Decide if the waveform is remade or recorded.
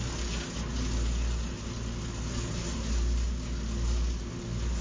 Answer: recorded